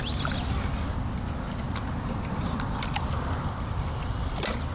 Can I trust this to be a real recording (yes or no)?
yes